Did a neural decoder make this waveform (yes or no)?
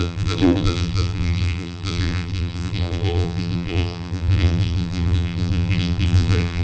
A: yes